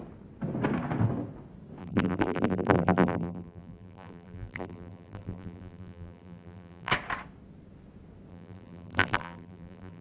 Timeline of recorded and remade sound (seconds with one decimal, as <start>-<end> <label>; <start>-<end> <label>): 0.0-1.8 recorded; 1.8-6.9 remade; 6.9-8.3 recorded; 8.3-10.0 remade